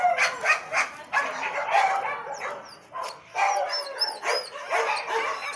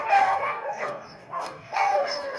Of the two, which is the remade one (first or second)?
second